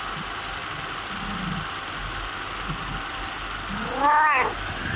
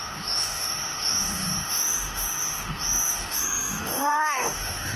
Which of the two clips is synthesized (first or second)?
second